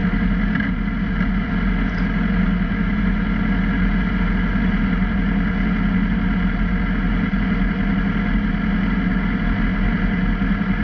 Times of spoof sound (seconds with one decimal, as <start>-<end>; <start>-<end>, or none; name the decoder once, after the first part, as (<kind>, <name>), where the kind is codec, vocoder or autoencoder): none